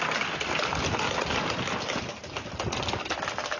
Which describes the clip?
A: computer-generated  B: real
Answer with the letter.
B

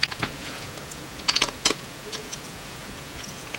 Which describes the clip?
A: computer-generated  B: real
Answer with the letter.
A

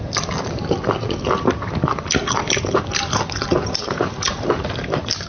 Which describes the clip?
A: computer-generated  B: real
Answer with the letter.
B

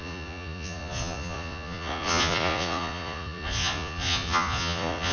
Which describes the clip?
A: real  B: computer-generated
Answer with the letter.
B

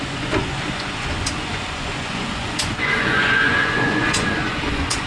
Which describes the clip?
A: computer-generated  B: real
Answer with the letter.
A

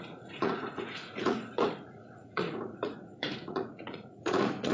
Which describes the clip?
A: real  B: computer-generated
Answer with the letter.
B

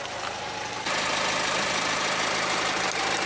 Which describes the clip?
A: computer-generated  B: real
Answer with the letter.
B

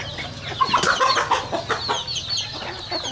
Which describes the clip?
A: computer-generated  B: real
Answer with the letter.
B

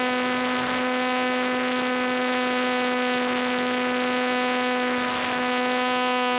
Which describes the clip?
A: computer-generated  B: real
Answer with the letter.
B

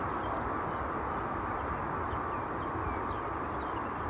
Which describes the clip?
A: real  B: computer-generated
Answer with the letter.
A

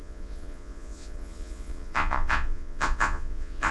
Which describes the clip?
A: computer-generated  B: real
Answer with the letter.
A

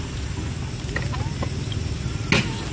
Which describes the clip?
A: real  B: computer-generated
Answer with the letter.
A